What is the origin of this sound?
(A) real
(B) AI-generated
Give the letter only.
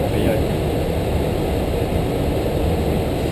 A